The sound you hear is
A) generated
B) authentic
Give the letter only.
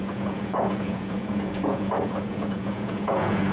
A